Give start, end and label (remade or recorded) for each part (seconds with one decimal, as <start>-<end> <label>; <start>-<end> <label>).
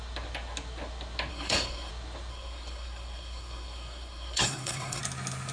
0.0-1.3 recorded; 1.3-1.9 remade; 1.9-2.3 recorded; 2.3-5.0 remade; 5.0-5.5 recorded